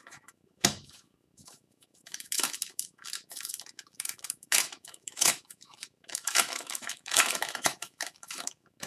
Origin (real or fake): fake